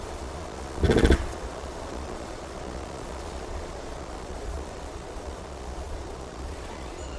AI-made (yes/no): yes